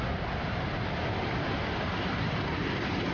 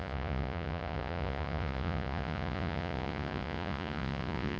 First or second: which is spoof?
second